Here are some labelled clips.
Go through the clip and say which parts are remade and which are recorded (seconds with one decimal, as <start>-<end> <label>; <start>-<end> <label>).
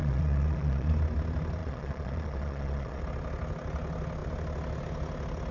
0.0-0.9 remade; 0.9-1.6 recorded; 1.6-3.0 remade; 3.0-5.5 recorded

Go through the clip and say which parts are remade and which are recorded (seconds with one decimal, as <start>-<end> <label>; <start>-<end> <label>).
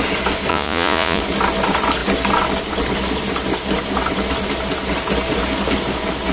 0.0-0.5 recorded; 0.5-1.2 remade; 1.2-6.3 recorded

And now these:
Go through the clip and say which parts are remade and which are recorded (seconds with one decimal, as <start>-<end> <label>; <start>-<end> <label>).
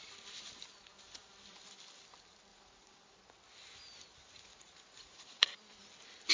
0.0-2.5 recorded; 2.5-3.0 remade; 3.0-4.2 recorded; 4.2-5.5 remade; 5.5-6.3 recorded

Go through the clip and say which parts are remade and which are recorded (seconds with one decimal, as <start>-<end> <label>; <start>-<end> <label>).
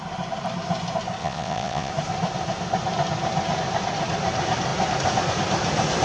0.0-1.2 recorded; 1.2-1.9 remade; 1.9-6.0 recorded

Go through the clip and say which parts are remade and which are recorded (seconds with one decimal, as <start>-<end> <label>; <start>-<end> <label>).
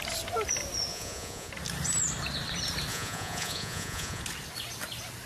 0.0-0.9 recorded; 0.9-1.5 remade; 1.5-2.9 recorded; 2.9-4.2 remade; 4.2-5.3 recorded